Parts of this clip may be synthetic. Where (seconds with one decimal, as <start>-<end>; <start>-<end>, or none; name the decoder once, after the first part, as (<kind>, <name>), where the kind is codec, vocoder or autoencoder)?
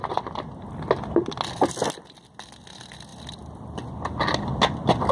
none